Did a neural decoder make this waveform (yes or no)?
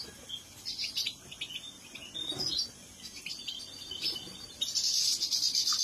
no